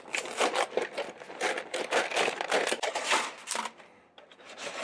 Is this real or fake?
fake